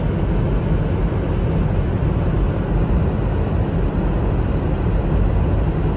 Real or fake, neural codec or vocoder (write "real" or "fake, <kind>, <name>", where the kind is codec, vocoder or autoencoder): real